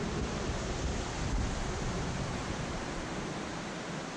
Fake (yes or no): no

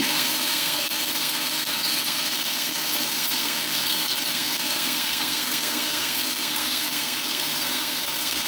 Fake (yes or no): yes